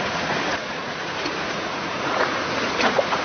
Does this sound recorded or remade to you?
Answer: remade